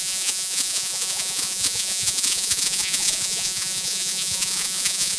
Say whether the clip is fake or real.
fake